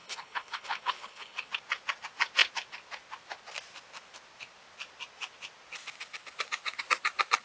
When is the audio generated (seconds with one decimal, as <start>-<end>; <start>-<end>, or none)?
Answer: 0.0-1.5